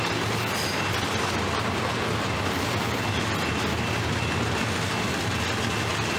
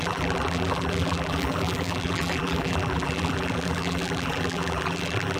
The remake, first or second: second